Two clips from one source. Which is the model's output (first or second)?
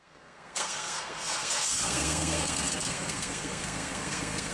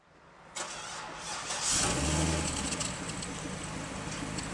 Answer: first